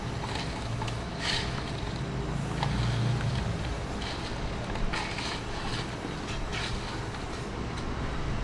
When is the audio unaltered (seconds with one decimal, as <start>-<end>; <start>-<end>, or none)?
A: 0.0-0.5; 1.6-8.4